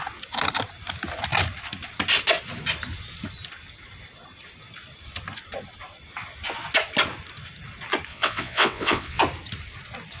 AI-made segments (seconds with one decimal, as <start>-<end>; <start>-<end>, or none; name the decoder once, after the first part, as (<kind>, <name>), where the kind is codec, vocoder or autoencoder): 8.1-9.2 (vocoder, WaveNeXt)